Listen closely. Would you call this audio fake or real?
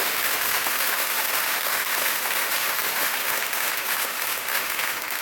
fake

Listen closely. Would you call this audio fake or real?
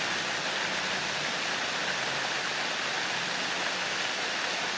real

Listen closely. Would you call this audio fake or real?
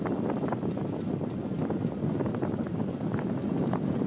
real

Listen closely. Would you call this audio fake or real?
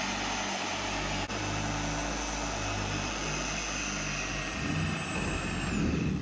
real